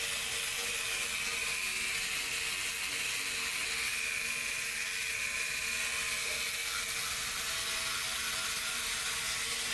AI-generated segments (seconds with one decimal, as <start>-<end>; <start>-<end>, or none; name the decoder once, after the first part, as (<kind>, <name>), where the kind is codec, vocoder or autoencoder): none